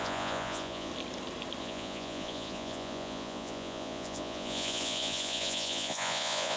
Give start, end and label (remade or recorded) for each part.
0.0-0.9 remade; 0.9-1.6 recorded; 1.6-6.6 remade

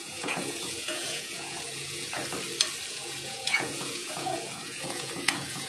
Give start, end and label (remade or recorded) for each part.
0.0-2.2 remade; 2.2-2.9 recorded; 2.9-5.7 remade

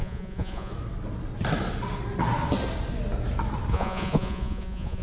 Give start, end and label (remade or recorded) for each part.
0.0-0.7 remade; 0.7-3.7 recorded; 3.7-5.0 remade

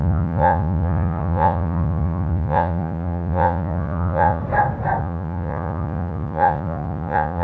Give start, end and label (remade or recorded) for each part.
0.0-4.4 remade; 4.4-5.0 recorded; 5.0-7.4 remade

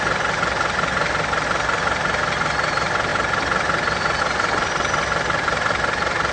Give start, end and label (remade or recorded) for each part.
0.0-6.3 recorded

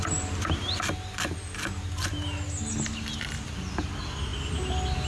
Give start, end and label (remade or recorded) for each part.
0.0-5.1 recorded

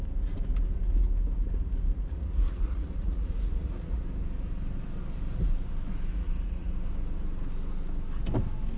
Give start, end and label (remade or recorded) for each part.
0.0-2.1 recorded; 2.1-4.0 remade; 4.0-6.1 recorded; 6.1-6.7 remade; 6.7-8.8 recorded